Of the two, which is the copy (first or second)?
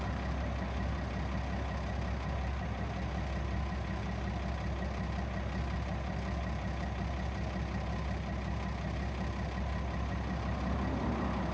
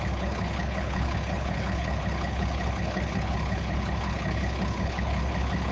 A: second